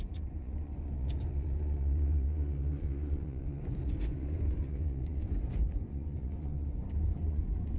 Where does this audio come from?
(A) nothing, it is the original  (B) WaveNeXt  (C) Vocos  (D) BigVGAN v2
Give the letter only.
C